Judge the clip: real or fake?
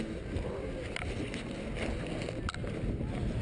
real